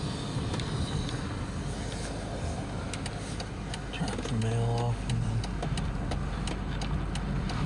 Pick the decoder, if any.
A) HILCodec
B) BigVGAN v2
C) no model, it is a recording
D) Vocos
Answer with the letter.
C